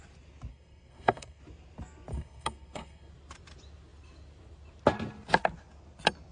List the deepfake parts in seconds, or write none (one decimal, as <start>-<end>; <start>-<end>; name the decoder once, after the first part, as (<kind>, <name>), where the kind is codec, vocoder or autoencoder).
0.5-1.4 (codec, SNAC); 2.1-3.1